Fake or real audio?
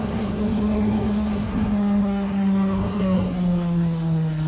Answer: fake